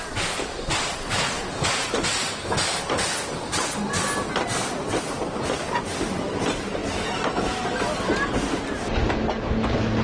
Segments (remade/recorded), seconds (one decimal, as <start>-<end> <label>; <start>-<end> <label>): 0.0-1.0 recorded; 1.0-1.5 remade; 1.5-10.0 recorded